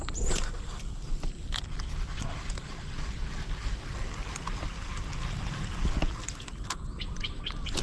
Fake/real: real